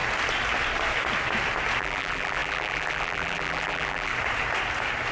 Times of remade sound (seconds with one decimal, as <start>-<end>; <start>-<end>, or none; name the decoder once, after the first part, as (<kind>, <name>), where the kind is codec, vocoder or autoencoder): 1.8-4.1 (vocoder, BigVGAN v2)